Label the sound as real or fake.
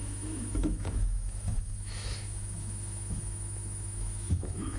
fake